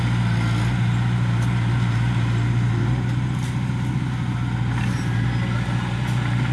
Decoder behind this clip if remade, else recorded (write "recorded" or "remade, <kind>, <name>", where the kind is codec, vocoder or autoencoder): recorded